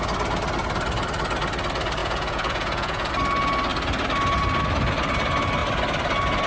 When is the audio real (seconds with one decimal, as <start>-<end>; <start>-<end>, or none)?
0.0-2.0; 3.1-6.5